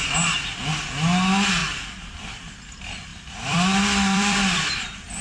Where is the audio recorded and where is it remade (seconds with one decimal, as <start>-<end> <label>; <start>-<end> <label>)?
0.0-3.1 recorded; 3.1-4.7 remade; 4.7-5.2 recorded